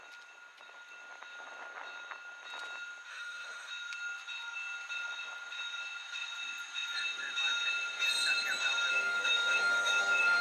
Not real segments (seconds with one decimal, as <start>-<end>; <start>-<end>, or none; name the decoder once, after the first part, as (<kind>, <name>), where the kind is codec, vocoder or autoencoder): 3.1-3.7 (autoencoder, DAC-VAE); 8.9-10.4